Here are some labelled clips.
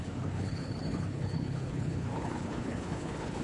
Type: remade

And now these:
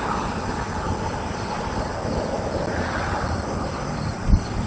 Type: recorded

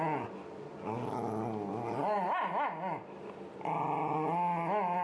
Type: recorded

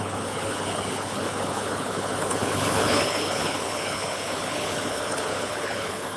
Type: remade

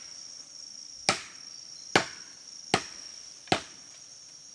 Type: recorded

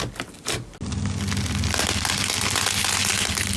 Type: recorded